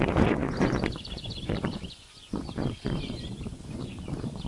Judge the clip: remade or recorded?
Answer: remade